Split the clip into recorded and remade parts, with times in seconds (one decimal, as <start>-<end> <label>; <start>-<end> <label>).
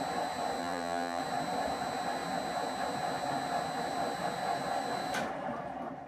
0.0-0.6 recorded; 0.6-1.2 remade; 1.2-6.1 recorded